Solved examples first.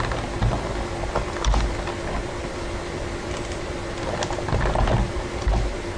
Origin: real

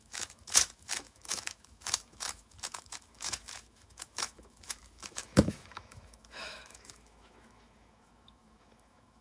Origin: fake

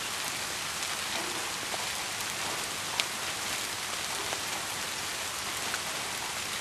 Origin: real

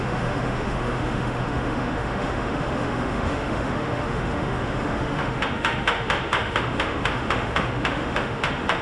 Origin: fake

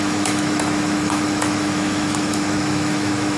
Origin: fake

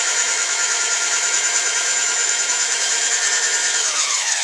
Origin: fake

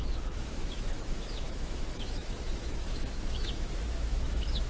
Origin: fake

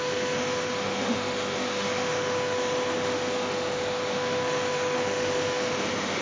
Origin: fake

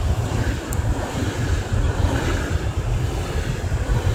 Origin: real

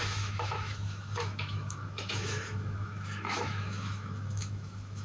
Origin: fake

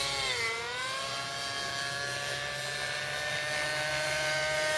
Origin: real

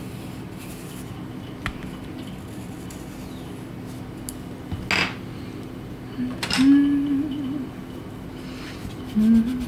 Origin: real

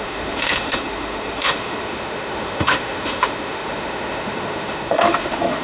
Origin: fake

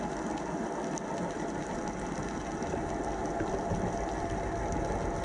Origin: real